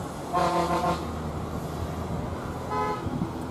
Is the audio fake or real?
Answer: real